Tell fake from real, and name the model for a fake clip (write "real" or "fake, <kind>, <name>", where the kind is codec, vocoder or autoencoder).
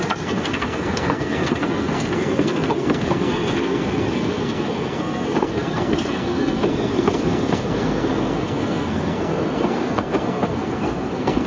fake, codec, SNAC